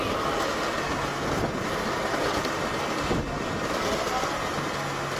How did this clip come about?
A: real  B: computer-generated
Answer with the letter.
A